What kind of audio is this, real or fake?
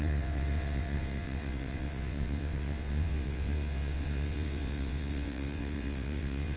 fake